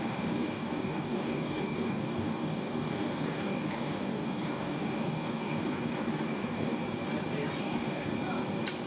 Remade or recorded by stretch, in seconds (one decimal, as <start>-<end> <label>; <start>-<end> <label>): 0.0-6.8 remade; 6.8-7.6 recorded; 7.6-8.1 remade; 8.1-8.9 recorded